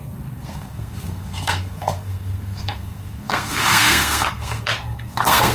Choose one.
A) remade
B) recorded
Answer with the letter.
A